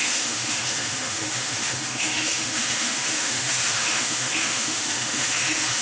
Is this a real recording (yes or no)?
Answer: no